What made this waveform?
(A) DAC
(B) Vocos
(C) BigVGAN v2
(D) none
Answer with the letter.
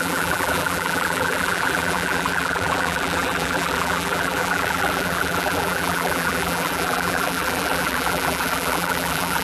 C